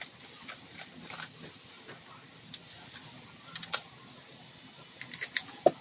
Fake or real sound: real